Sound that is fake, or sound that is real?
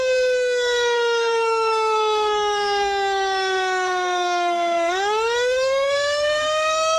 fake